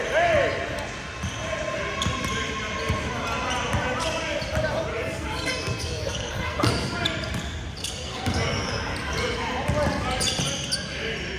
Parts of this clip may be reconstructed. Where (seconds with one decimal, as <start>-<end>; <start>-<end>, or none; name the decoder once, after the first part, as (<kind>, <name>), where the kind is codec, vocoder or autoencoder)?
4.9-6.7 (codec, SNAC); 7.8-8.7